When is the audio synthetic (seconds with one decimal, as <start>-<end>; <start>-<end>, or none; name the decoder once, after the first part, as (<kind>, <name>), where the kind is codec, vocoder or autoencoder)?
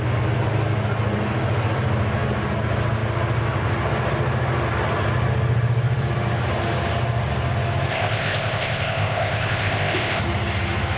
7.9-10.2 (codec, ZipCodec)